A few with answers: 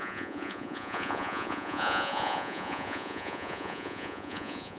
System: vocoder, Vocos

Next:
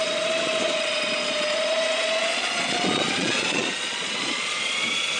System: vocoder, Vocos